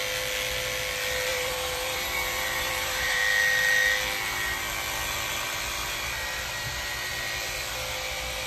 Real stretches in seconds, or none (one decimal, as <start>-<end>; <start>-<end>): 0.0-1.3; 3.2-8.5